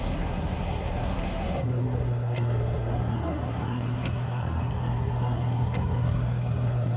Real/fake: fake